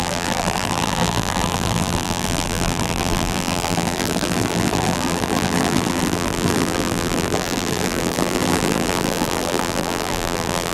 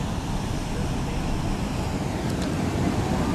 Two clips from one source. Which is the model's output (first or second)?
first